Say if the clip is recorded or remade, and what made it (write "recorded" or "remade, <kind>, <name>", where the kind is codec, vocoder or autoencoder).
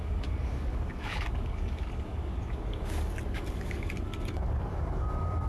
remade, codec, DAC